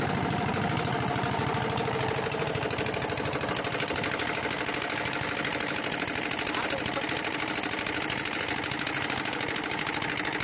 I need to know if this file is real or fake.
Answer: real